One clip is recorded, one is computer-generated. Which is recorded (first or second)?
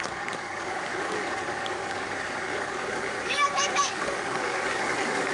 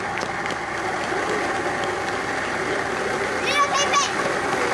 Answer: second